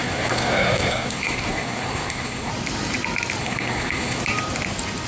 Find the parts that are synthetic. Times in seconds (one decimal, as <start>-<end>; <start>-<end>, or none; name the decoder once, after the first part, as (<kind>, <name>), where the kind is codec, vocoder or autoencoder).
0.0-2.5 (codec, SNAC); 3.4-4.2